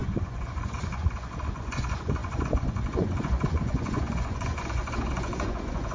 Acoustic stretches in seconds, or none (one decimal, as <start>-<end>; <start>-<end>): none